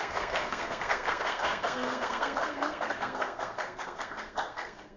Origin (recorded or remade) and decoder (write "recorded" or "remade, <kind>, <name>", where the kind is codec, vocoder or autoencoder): remade, codec, SNAC